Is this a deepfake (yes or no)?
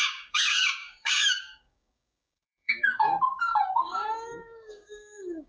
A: yes